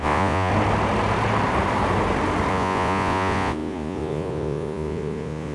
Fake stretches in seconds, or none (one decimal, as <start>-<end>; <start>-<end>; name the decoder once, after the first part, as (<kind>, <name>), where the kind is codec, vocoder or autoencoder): 0.0-0.5 (vocoder, Vocos); 2.5-5.5